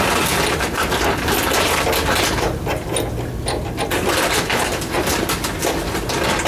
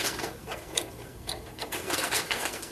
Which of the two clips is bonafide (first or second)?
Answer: first